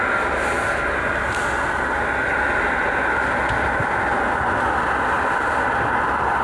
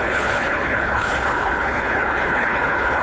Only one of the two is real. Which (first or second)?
first